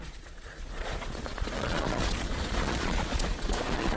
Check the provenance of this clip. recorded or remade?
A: remade